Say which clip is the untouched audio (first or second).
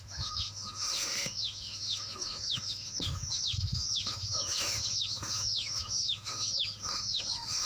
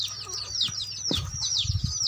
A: second